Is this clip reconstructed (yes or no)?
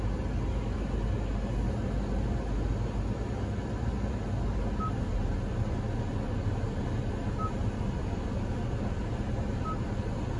no